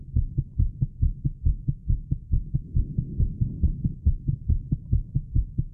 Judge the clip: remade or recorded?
recorded